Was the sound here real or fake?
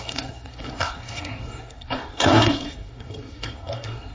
fake